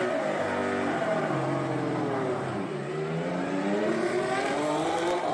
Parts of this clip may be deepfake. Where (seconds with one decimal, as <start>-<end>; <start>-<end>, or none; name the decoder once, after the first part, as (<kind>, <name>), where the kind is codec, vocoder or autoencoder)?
none